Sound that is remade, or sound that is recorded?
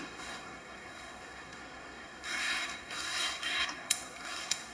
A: remade